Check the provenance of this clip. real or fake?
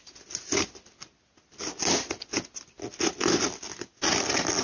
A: real